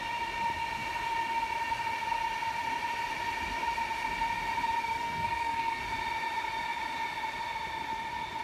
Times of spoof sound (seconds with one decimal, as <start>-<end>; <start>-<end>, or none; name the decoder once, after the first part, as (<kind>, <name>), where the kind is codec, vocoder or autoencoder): 4.8-5.8 (codec, SNAC)